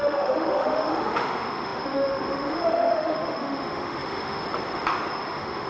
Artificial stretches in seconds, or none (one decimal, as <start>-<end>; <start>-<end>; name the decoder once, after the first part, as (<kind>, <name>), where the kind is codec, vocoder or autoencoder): 0.0-4.4 (autoencoder, DAC-VAE); 5.2-5.7